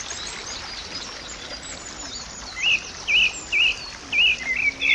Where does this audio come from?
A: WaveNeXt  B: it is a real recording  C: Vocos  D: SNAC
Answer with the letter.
B